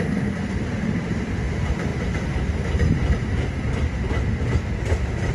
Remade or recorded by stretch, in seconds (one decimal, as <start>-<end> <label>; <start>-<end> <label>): 0.0-5.3 recorded